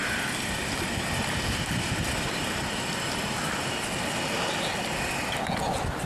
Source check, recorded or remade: recorded